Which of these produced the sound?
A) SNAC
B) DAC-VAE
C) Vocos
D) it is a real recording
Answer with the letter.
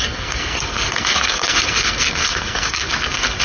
A